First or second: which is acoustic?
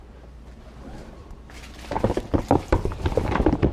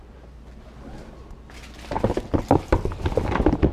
second